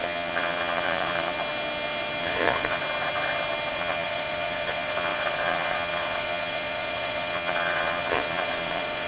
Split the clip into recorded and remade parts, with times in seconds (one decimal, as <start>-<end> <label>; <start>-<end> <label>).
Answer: 0.0-1.4 remade; 1.4-2.2 recorded; 2.2-2.8 remade; 2.8-3.7 recorded; 3.7-9.1 remade